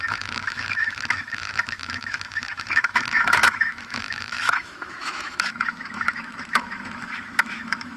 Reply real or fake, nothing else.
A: fake